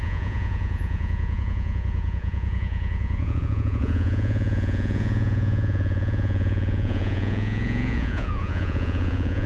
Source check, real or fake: fake